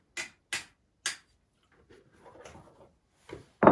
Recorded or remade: recorded